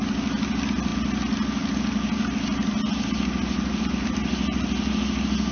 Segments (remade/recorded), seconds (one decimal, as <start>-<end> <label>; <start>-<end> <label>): 0.0-5.5 recorded